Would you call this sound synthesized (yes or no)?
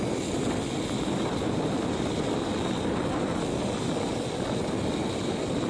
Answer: no